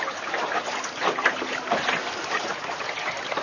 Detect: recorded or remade recorded